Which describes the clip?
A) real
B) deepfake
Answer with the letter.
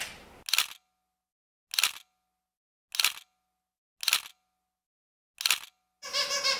A